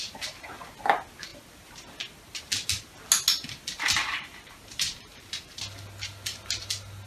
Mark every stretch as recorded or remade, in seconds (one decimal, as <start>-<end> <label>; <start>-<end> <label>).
0.0-1.3 recorded; 1.3-1.9 remade; 1.9-4.0 recorded; 4.0-5.6 remade; 5.6-7.1 recorded